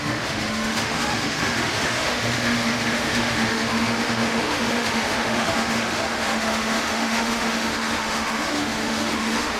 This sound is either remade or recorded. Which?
remade